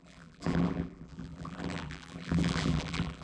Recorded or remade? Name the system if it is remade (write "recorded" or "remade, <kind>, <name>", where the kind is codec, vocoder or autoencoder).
remade, vocoder, BigVGAN v2